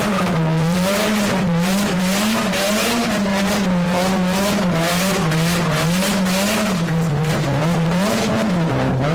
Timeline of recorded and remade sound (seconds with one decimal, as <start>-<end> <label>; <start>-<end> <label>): 0.0-9.1 remade